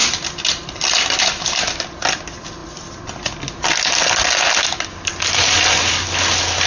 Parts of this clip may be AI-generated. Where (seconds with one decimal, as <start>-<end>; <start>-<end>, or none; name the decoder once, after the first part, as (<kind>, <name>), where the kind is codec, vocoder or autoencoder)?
none